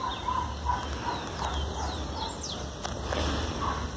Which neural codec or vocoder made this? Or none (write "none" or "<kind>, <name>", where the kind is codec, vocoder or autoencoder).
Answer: none